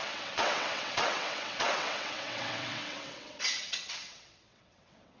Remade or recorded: remade